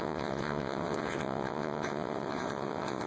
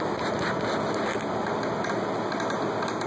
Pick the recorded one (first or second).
second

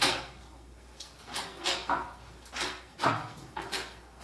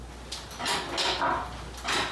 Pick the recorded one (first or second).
second